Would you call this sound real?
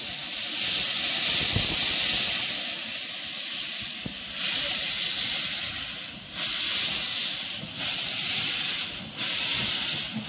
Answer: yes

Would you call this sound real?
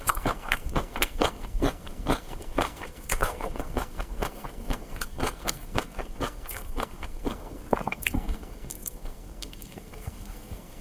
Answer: no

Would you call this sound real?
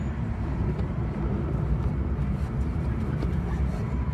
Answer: no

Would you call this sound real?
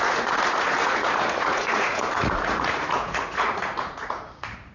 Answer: no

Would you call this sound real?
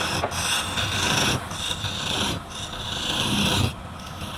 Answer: yes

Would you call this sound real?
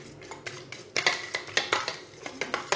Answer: yes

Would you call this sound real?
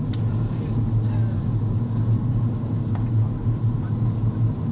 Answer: yes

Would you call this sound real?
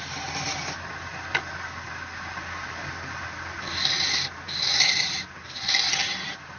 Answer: yes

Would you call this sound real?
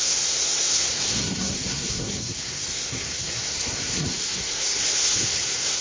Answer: no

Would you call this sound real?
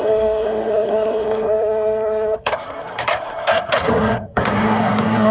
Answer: no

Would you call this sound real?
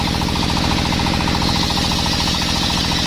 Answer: yes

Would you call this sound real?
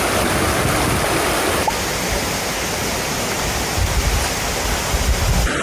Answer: yes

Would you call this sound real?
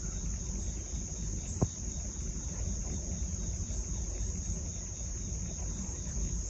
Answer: yes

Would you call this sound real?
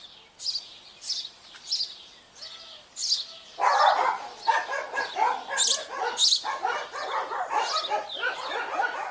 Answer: yes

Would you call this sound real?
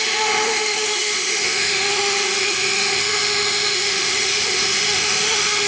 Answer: no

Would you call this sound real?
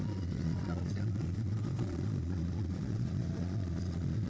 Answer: no